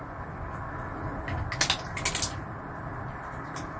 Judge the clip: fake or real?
real